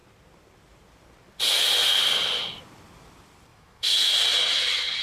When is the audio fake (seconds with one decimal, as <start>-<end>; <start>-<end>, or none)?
3.5-4.1